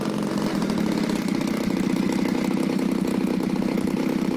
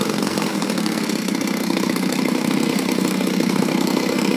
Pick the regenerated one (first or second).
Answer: second